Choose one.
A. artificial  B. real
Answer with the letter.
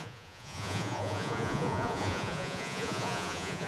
A